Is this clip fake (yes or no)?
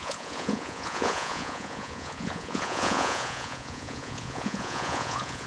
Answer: yes